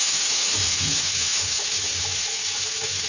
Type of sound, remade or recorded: remade